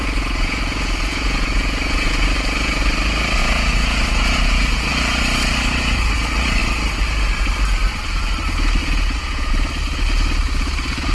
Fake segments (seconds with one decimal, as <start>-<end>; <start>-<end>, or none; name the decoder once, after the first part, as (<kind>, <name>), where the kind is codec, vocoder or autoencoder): 0.0-2.8 (vocoder, Vocos); 3.4-4.9; 8.8-9.5